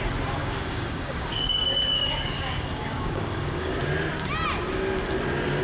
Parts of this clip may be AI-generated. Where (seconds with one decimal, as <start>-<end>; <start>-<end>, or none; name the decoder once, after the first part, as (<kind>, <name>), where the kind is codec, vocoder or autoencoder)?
0.4-3.8 (codec, DAC)